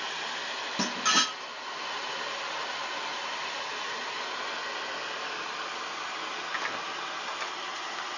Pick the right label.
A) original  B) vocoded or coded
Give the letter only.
A